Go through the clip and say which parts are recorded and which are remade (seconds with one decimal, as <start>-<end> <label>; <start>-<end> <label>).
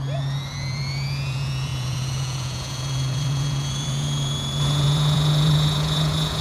0.0-6.4 remade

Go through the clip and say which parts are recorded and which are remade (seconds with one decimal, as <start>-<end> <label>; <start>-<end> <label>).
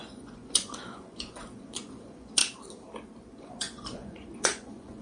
0.0-2.4 remade; 2.4-3.4 recorded; 3.4-5.0 remade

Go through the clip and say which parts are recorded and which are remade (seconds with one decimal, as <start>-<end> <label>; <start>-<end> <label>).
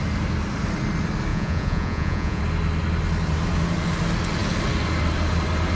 0.0-1.3 recorded; 1.3-2.4 remade; 2.4-5.7 recorded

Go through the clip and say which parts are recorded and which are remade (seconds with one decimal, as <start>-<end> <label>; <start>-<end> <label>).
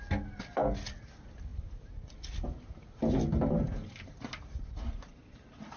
0.0-5.8 recorded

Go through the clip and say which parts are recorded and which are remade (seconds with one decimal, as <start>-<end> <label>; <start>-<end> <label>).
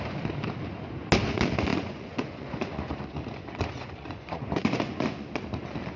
0.0-1.7 recorded; 1.7-5.3 remade; 5.3-6.0 recorded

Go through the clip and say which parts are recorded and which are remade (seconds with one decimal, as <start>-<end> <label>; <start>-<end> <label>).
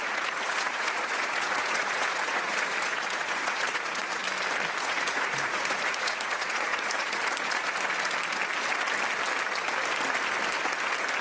0.0-4.2 remade; 4.2-4.8 recorded; 4.8-7.2 remade; 7.2-11.2 recorded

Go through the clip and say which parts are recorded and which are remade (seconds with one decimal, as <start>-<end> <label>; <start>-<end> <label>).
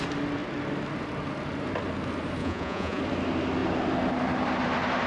0.0-2.4 recorded; 2.4-3.0 remade; 3.0-5.1 recorded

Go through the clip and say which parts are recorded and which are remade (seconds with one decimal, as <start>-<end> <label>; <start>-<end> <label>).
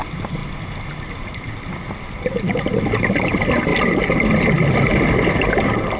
0.0-6.0 recorded